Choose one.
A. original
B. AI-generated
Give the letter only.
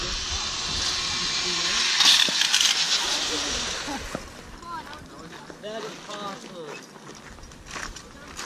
A